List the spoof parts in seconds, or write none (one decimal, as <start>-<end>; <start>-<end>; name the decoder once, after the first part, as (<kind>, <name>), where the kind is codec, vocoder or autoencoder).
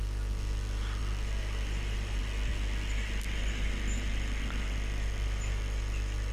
none